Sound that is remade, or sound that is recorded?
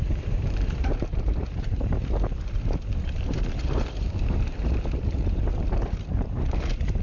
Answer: remade